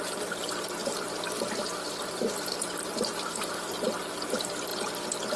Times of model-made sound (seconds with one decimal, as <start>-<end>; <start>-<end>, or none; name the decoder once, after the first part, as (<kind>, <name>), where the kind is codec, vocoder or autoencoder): 0.0-4.7 (vocoder, BigVGAN v2)